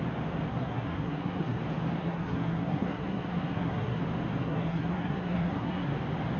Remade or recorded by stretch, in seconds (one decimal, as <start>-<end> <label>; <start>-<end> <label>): 0.0-0.5 recorded; 0.5-1.6 remade; 1.6-2.0 recorded; 2.0-4.0 remade; 4.0-4.4 recorded; 4.4-5.9 remade; 5.9-6.4 recorded